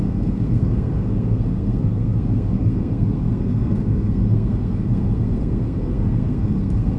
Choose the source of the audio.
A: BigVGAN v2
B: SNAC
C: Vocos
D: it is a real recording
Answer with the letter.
B